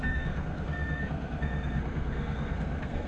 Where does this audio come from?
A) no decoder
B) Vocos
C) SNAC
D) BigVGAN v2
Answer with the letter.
C